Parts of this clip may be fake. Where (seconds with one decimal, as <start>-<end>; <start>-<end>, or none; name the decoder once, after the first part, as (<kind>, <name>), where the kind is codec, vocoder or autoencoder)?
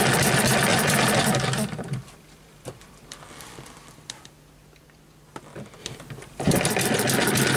0.7-5.0 (vocoder, BigVGAN v2); 5.8-6.5